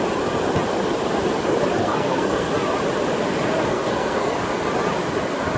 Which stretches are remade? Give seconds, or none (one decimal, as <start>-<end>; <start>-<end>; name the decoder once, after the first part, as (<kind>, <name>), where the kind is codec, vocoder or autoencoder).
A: 1.8-2.5 (codec, SNAC); 3.7-4.3